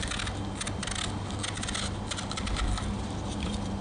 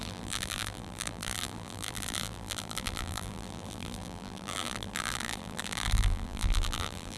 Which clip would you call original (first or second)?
first